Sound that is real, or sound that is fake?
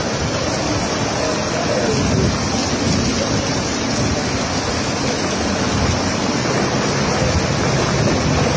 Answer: real